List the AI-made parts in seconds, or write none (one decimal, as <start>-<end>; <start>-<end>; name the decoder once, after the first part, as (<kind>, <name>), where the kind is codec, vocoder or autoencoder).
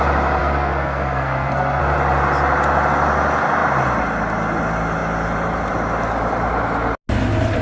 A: 0.4-1.8 (codec, SNAC)